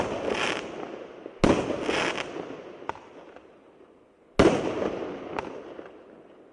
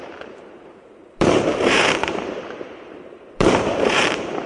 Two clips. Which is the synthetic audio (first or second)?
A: second